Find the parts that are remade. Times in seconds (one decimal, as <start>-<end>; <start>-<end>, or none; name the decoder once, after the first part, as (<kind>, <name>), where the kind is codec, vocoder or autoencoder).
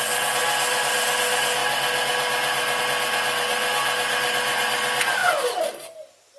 none